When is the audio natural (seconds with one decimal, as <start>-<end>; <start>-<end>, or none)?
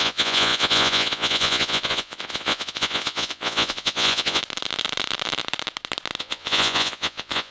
4.4-6.2